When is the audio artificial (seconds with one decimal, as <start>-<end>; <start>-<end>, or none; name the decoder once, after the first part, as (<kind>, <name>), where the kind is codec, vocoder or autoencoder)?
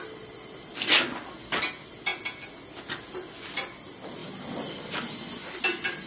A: none